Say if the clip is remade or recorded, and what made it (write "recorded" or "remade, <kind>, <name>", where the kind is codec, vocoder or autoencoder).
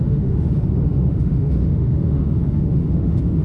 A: remade, autoencoder, DAC-VAE